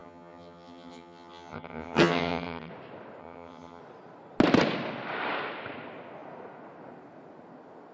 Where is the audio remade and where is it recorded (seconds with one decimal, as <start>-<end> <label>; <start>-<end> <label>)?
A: 0.0-2.7 remade; 2.7-3.2 recorded; 3.2-3.8 remade; 3.8-7.9 recorded